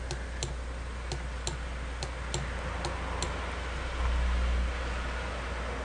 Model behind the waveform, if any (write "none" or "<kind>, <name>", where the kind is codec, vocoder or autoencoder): none